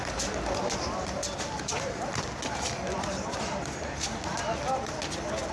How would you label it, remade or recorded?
recorded